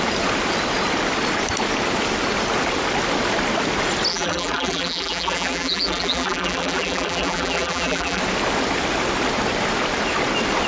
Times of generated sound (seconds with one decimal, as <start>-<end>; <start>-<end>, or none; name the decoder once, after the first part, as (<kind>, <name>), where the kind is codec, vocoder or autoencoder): 4.1-8.2 (vocoder, BigVGAN v2)